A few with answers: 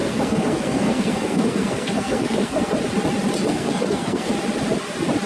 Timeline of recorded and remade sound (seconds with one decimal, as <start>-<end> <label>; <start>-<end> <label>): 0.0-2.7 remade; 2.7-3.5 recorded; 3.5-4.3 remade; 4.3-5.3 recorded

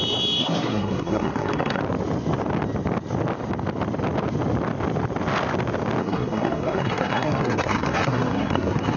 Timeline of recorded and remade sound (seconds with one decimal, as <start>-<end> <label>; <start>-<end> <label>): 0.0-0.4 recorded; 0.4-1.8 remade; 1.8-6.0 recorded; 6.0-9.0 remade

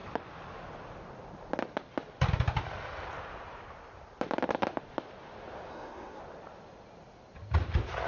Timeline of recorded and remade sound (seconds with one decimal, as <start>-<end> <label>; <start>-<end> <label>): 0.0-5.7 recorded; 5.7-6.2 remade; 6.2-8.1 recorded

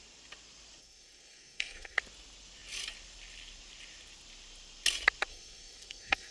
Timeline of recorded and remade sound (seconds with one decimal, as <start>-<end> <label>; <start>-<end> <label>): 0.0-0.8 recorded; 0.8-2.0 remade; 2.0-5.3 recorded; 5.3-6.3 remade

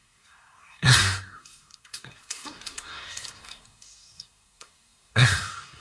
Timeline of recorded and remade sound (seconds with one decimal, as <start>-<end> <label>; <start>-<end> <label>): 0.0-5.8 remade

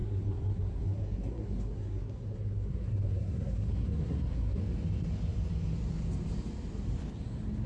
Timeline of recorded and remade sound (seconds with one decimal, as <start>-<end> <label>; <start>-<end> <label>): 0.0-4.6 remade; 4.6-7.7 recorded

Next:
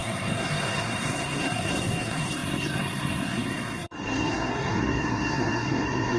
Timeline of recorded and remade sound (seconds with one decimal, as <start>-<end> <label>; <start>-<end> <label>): 0.0-6.2 remade